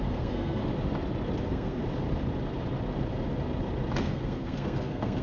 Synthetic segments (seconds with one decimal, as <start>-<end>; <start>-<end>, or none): 0.0-0.6; 1.4-1.8; 4.0-5.2